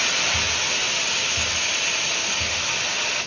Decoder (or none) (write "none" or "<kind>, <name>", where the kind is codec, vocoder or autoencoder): none